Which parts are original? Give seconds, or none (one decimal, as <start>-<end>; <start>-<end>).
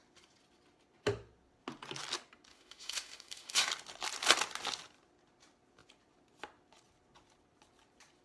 0.0-2.5; 3.7-8.2